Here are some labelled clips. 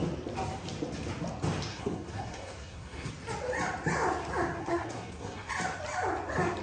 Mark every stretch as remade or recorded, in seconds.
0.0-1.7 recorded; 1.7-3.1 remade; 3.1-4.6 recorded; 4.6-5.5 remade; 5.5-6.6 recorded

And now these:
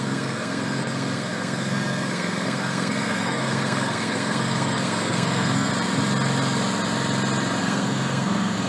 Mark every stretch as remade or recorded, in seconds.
0.0-5.7 remade; 5.7-7.6 recorded; 7.6-8.7 remade

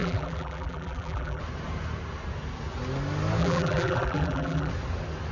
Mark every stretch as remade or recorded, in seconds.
0.0-1.4 remade; 1.4-3.4 recorded; 3.4-4.7 remade; 4.7-5.3 recorded

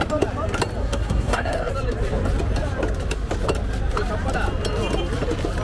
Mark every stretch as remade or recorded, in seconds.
0.0-0.8 recorded; 0.8-1.7 remade; 1.7-5.6 recorded

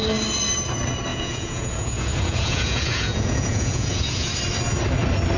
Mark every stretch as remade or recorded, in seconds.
0.0-1.1 recorded; 1.1-4.3 remade; 4.3-5.4 recorded

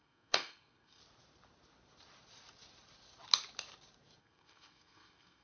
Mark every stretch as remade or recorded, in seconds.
0.0-1.0 remade; 1.0-4.2 recorded; 4.2-5.4 remade

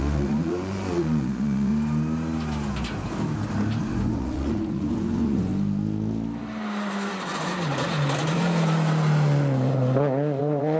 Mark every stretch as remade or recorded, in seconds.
0.0-1.7 remade; 1.7-3.8 recorded; 3.8-5.5 remade; 5.5-7.1 recorded; 7.1-7.5 remade; 7.5-10.4 recorded; 10.4-10.8 remade

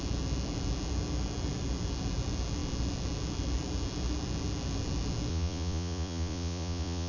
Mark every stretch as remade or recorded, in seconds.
0.0-5.3 recorded; 5.3-7.1 remade